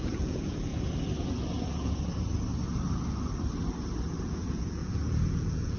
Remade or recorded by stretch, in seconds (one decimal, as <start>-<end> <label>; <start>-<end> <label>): 0.0-0.7 remade; 0.7-4.2 recorded; 4.2-5.8 remade